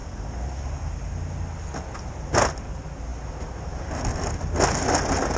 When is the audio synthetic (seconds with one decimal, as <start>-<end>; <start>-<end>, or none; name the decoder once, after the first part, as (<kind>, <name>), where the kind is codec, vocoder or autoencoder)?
none